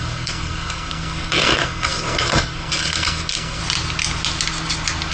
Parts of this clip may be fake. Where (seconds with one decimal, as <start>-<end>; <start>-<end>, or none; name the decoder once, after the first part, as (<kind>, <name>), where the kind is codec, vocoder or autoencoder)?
0.0-3.6 (codec, SNAC)